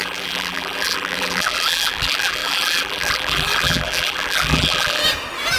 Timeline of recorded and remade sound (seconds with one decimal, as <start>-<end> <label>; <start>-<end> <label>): 0.0-5.0 remade; 5.0-5.6 recorded